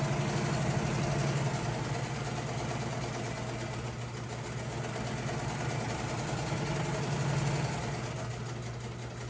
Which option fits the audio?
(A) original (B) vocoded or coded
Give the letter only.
A